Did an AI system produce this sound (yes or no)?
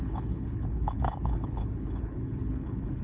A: yes